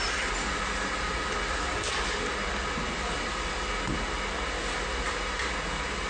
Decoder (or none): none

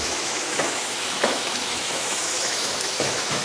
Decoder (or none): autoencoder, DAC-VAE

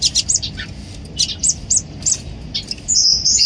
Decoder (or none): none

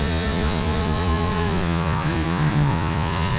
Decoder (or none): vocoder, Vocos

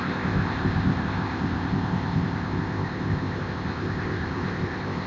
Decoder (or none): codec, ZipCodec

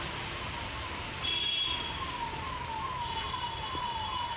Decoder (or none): none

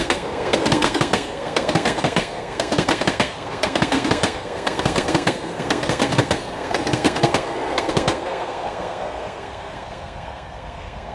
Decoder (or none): codec, SNAC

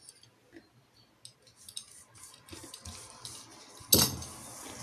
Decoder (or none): none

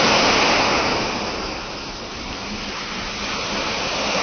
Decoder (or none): none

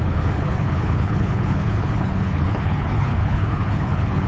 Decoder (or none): codec, HILCodec